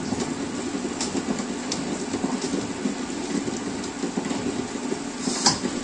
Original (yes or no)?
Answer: yes